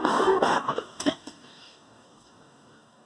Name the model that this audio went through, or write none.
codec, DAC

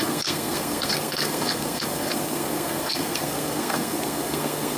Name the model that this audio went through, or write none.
codec, SNAC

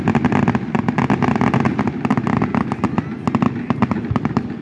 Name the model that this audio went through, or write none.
none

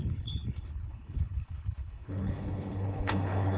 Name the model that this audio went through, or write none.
codec, HILCodec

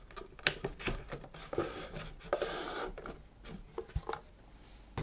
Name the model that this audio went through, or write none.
none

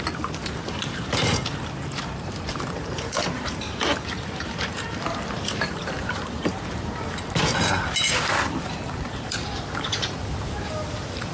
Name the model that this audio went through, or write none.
vocoder, BigVGAN v2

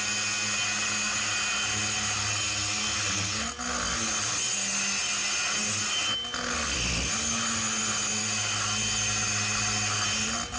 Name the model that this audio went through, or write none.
none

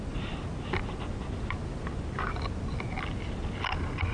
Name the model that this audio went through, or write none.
none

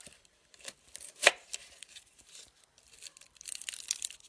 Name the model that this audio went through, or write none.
vocoder, BigVGAN v2